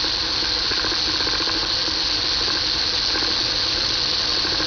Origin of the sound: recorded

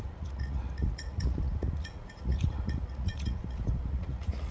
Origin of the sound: remade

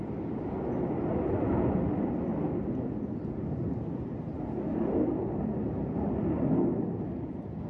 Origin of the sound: recorded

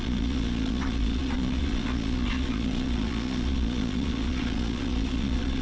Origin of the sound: remade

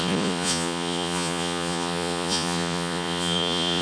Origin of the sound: remade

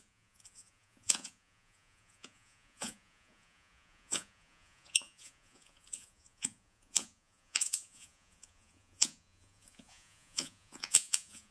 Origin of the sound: remade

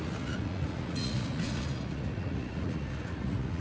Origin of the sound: remade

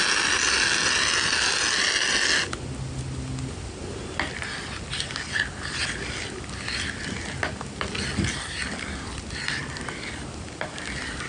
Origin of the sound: recorded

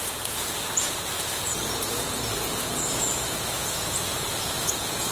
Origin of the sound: remade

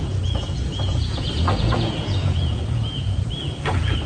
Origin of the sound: remade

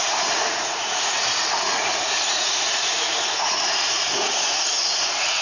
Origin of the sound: remade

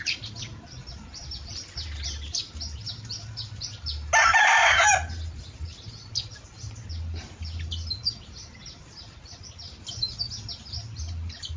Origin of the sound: recorded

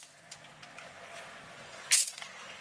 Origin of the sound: remade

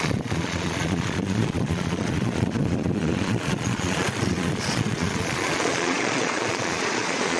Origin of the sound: remade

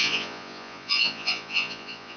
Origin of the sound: remade